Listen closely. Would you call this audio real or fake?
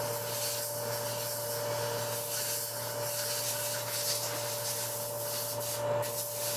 real